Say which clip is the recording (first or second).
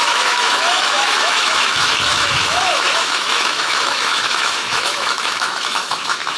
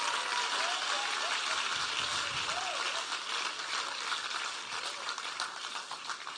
second